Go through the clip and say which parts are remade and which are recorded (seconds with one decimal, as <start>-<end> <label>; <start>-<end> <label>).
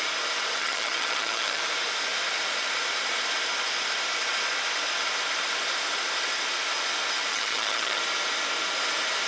0.0-0.6 recorded; 0.6-1.6 remade; 1.6-7.3 recorded; 7.3-8.0 remade; 8.0-9.3 recorded